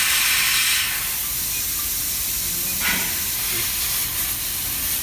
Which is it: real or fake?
real